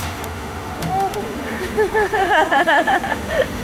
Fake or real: fake